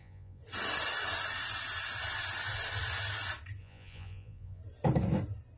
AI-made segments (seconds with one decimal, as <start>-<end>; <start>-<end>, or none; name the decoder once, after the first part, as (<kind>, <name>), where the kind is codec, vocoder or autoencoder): 0.0-0.4 (vocoder, Vocos); 3.6-4.6